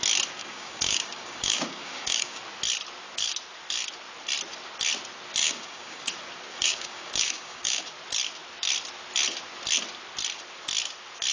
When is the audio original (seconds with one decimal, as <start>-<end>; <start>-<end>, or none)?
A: 0.0-0.4; 2.4-5.4; 6.1-6.5; 7.9-11.3